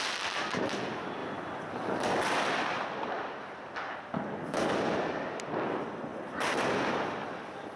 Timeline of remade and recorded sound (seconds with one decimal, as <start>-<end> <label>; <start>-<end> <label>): 0.0-7.8 recorded